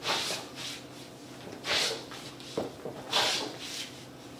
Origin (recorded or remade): recorded